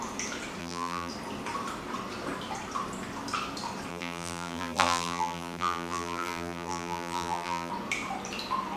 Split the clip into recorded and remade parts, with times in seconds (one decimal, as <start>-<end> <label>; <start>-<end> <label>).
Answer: 0.0-0.6 recorded; 0.6-1.1 remade; 1.1-3.9 recorded; 3.9-7.7 remade; 7.7-8.8 recorded